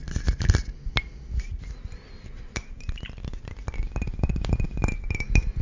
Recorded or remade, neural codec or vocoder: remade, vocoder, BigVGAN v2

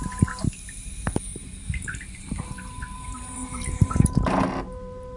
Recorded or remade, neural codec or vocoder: remade, vocoder, BigVGAN v2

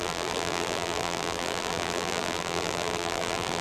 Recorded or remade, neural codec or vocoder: remade, vocoder, BigVGAN v2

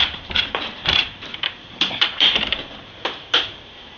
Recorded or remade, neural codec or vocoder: remade, vocoder, BigVGAN v2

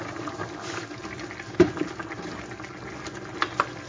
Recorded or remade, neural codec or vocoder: recorded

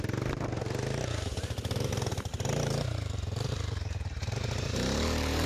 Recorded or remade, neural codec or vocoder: remade, vocoder, BigVGAN v2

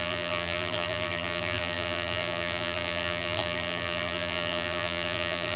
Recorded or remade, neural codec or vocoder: remade, vocoder, BigVGAN v2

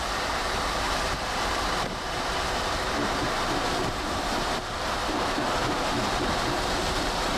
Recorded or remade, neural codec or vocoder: remade, vocoder, BigVGAN v2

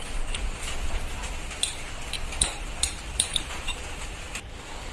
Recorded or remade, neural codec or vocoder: remade, vocoder, BigVGAN v2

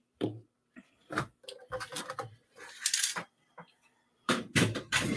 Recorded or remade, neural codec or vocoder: remade, vocoder, BigVGAN v2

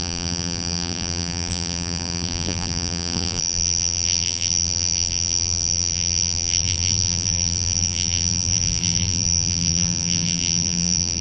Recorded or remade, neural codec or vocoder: remade, vocoder, BigVGAN v2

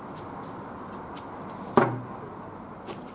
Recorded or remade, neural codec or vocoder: recorded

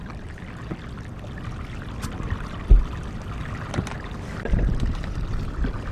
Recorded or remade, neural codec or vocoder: remade, vocoder, BigVGAN v2